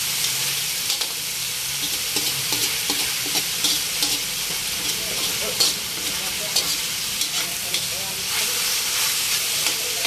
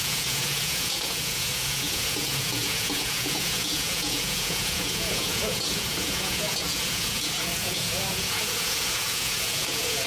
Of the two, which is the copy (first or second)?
second